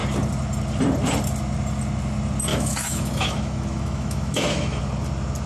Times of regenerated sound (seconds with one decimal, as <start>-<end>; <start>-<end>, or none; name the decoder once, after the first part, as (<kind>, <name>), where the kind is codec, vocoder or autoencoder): 2.5-4.8 (autoencoder, DAC-VAE)